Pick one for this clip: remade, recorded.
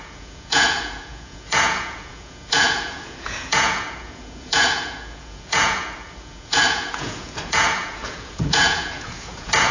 remade